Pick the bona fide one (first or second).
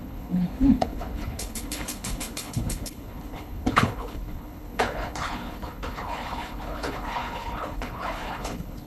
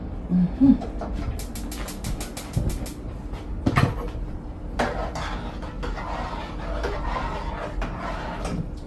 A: second